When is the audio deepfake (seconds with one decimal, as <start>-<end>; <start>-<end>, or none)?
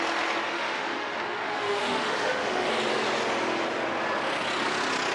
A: 0.5-2.7